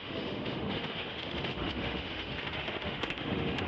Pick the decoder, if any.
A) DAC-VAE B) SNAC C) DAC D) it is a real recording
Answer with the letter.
A